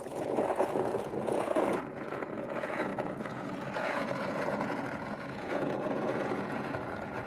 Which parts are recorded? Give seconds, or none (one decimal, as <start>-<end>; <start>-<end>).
none